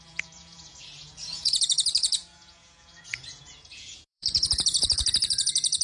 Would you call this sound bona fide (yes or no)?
no